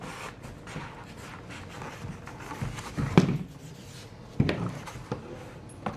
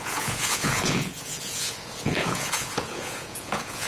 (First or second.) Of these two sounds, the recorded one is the first